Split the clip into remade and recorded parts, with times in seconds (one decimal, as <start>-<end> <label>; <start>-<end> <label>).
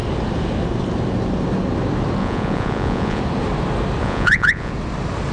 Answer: 0.0-2.2 recorded; 2.2-3.2 remade; 3.2-4.0 recorded; 4.0-4.7 remade; 4.7-5.3 recorded